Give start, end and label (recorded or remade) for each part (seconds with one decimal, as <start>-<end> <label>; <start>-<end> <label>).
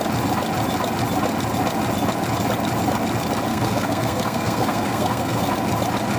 0.0-3.5 recorded; 3.5-5.5 remade; 5.5-6.2 recorded